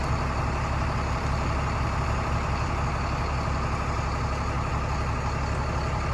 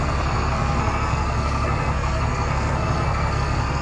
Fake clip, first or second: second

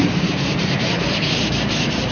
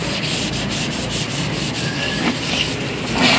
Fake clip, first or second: first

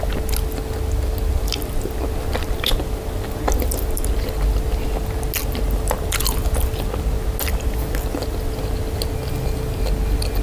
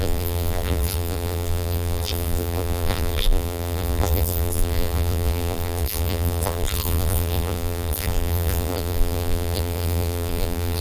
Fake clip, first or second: second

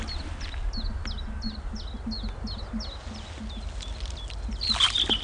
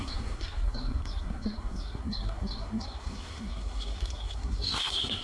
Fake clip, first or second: second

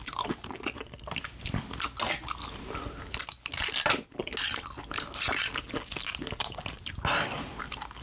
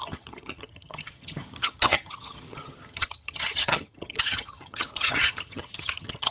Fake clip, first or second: second